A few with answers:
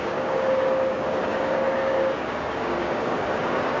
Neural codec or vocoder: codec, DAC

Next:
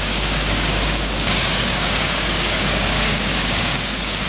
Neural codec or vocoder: codec, DAC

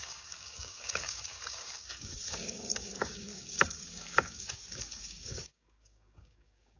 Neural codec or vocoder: codec, DAC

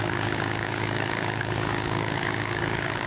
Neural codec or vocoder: codec, DAC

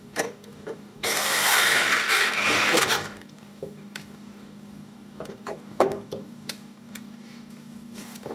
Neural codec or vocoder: codec, DAC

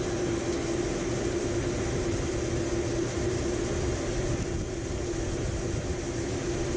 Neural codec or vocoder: none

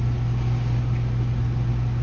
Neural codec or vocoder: none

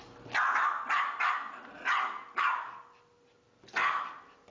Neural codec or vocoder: none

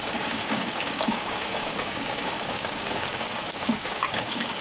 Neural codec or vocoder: codec, DAC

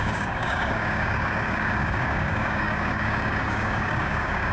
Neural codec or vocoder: codec, DAC